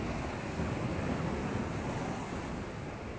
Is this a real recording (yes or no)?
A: yes